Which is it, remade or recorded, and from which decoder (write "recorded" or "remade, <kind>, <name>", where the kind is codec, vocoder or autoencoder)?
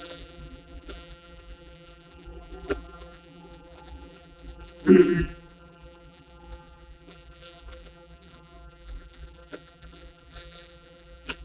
remade, vocoder, BigVGAN v2